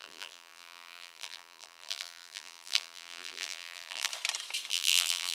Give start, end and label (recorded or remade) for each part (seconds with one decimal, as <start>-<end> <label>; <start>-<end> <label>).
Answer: 0.0-4.1 remade; 4.1-4.7 recorded; 4.7-5.3 remade